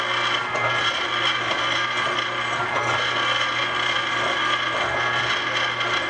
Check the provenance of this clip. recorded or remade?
recorded